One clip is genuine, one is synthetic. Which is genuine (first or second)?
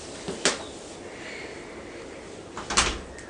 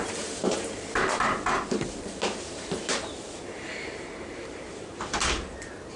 first